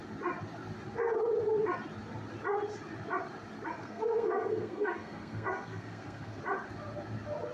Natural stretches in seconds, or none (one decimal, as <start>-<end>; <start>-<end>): 0.0-3.8; 6.4-7.5